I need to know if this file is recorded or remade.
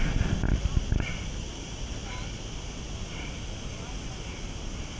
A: recorded